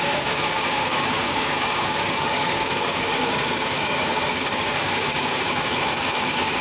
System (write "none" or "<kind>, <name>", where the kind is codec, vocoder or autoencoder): codec, DAC